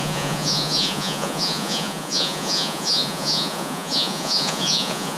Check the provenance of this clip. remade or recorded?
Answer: remade